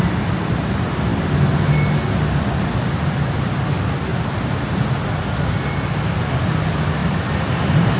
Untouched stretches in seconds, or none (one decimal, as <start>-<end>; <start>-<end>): 0.0-4.1; 4.9-7.0

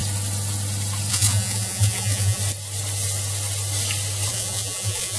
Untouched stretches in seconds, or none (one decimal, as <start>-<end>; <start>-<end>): 0.0-1.1; 2.4-4.3